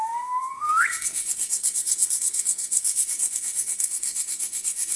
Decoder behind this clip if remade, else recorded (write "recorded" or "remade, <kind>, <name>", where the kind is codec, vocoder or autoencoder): remade, codec, SNAC